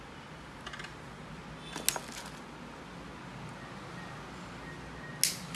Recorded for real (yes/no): yes